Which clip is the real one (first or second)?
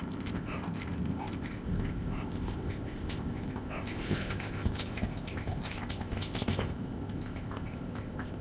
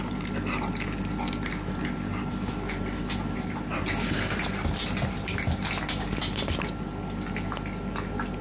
second